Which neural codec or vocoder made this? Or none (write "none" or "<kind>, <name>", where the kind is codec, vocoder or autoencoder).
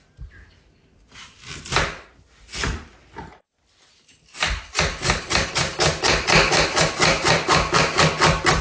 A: none